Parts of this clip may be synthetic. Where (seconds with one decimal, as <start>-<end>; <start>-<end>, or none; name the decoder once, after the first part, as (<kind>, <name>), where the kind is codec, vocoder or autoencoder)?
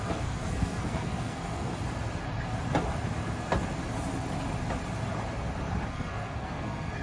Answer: 0.0-1.7 (codec, SNAC); 5.9-7.0